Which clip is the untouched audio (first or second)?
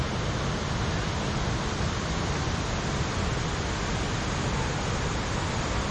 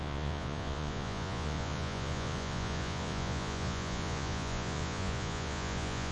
first